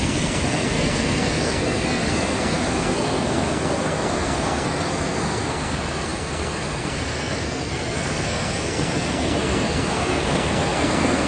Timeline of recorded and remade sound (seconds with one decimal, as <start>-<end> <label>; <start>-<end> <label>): 0.0-11.3 remade